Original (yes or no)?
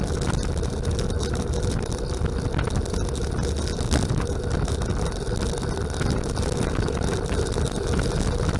yes